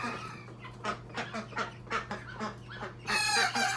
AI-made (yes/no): no